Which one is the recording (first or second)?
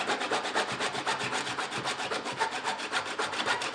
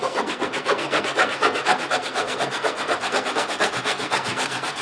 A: first